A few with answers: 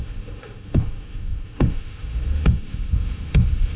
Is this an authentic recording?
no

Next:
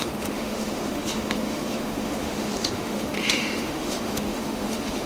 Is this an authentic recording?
no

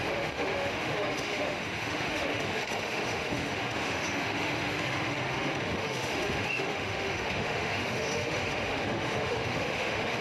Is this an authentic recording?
no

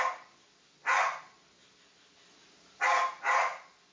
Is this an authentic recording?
yes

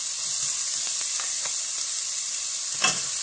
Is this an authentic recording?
yes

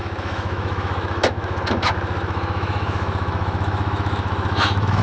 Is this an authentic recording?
no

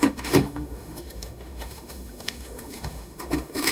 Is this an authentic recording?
no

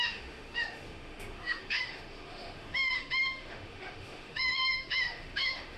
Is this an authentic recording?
no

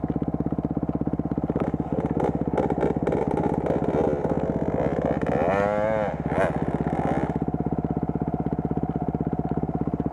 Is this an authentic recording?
yes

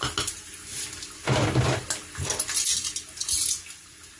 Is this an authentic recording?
yes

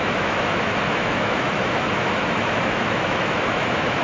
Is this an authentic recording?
no